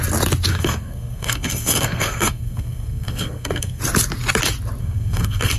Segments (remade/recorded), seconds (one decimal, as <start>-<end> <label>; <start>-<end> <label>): 0.0-0.5 recorded; 0.5-3.8 remade; 3.8-4.8 recorded; 4.8-5.6 remade